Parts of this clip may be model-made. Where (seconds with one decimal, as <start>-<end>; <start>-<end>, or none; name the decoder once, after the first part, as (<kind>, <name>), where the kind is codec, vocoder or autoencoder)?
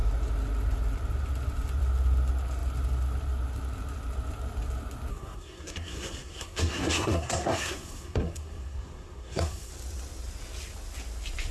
5.1-9.7 (codec, SNAC)